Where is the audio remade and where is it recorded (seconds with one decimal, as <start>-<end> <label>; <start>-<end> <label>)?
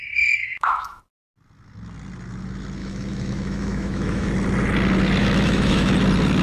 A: 0.0-0.4 recorded; 0.4-1.0 remade; 1.0-2.8 recorded; 2.8-4.3 remade; 4.3-5.2 recorded; 5.2-5.9 remade; 5.9-6.4 recorded